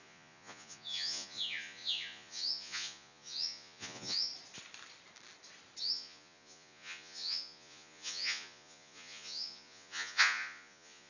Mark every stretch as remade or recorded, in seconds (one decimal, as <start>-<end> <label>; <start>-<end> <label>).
0.0-4.3 remade; 4.3-5.8 recorded; 5.8-11.1 remade